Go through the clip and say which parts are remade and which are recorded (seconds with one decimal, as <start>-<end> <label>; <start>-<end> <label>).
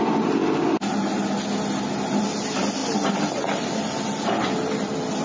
0.0-5.2 recorded